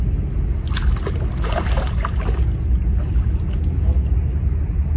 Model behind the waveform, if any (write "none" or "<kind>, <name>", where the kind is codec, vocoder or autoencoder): none